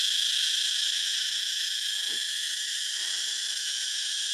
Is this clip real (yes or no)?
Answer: no